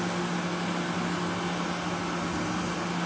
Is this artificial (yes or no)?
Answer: no